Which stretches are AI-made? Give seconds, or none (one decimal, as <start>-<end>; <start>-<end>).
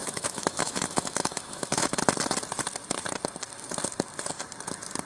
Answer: 0.0-2.0